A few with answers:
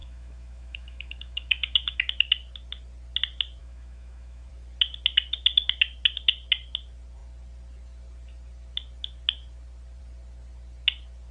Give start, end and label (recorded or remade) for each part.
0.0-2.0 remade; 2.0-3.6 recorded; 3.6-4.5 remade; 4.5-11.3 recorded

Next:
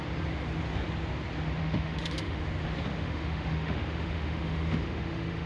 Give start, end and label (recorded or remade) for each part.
0.0-1.6 recorded; 1.6-2.4 remade; 2.4-2.9 recorded; 2.9-5.5 remade

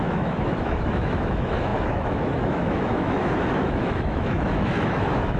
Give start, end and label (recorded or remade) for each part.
0.0-5.4 remade

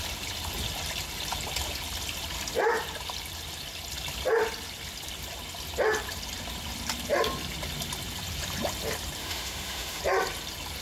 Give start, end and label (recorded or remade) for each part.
0.0-9.2 recorded; 9.2-10.0 remade; 10.0-10.8 recorded

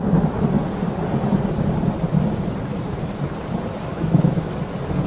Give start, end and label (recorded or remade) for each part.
0.0-3.9 recorded; 3.9-4.5 remade; 4.5-5.1 recorded

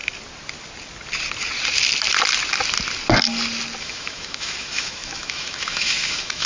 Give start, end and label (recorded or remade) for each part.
0.0-3.8 recorded; 3.8-6.5 remade